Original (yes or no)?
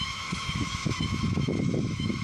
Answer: no